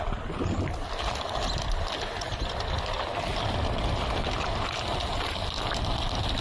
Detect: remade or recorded recorded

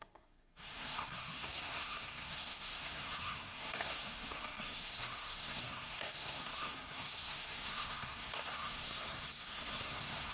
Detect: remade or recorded remade